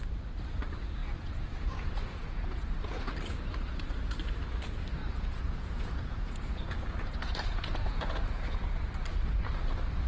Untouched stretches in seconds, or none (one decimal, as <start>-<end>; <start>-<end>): 0.0-1.0; 3.1-5.0; 8.8-10.1